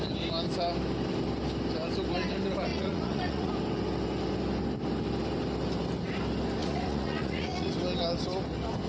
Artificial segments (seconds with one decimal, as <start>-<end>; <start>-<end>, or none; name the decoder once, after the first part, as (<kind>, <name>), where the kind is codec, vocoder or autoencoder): 2.7-3.5 (vocoder, Vocos); 6.6-7.7